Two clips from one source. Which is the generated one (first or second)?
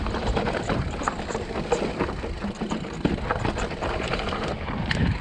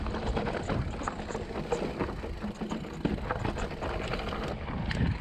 first